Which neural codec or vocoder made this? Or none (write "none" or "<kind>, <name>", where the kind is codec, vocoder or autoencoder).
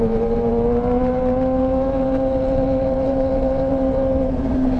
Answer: vocoder, BigVGAN v2